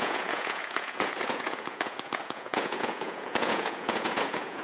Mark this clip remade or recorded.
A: remade